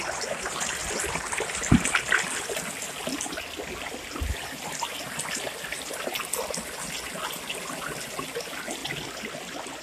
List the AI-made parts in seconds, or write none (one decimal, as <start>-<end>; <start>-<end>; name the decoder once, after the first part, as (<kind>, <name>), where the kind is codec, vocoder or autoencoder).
0.8-1.9 (vocoder, BigVGAN v2)